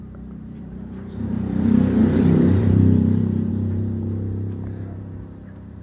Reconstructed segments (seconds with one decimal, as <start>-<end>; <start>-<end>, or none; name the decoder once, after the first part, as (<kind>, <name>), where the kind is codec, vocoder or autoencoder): 0.0-5.8 (vocoder, BigVGAN v2)